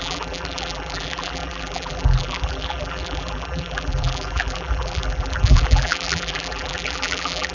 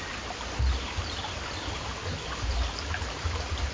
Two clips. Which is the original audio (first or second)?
second